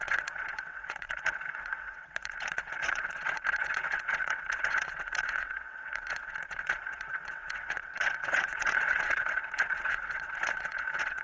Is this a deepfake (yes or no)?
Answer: yes